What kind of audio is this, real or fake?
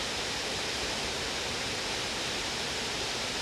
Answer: fake